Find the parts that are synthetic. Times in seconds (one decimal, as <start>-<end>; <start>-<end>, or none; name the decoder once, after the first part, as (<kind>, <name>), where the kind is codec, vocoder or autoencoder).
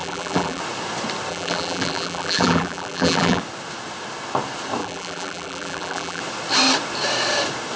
0.0-0.6 (vocoder, BigVGAN v2); 1.3-3.4; 4.8-6.2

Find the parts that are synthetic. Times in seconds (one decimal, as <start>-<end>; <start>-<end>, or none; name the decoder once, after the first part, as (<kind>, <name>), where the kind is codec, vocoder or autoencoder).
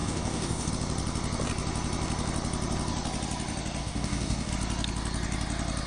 0.0-0.7 (codec, DAC); 3.8-4.5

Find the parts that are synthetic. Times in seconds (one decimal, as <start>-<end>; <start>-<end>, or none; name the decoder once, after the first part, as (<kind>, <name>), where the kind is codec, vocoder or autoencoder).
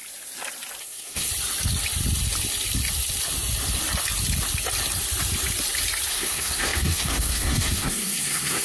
0.8-1.3 (codec, SNAC); 6.1-8.6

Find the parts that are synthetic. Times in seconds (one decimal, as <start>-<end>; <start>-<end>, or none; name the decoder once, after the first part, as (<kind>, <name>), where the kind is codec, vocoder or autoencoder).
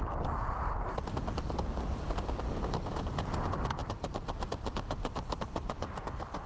none